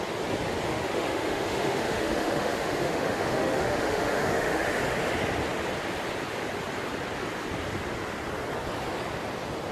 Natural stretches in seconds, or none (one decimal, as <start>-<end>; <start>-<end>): 0.0-0.7; 4.8-9.7